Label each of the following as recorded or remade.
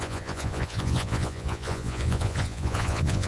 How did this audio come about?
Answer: remade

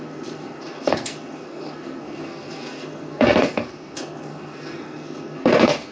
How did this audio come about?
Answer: remade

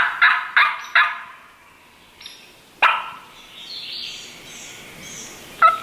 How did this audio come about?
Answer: recorded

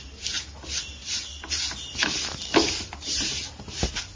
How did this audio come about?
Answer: recorded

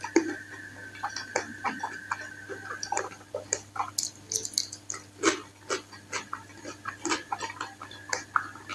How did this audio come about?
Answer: recorded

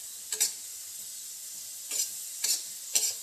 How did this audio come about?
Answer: recorded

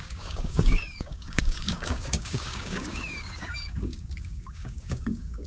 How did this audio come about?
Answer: remade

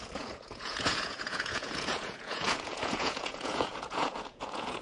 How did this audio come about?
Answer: remade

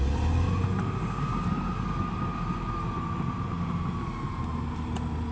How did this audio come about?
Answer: recorded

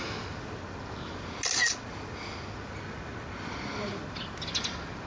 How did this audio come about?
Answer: recorded